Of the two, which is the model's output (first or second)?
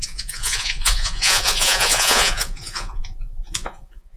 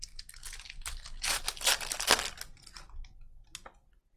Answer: first